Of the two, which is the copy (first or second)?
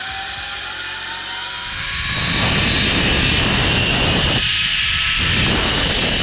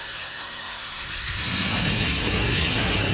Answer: second